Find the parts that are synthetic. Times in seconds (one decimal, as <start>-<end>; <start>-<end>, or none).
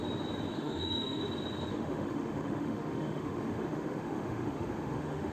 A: 0.5-1.2; 1.7-5.3